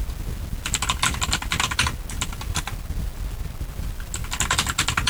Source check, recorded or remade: recorded